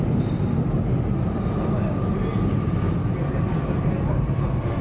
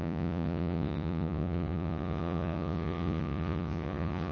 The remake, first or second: second